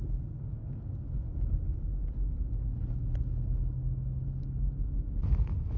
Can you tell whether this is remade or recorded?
recorded